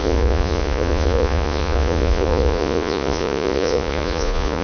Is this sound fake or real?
fake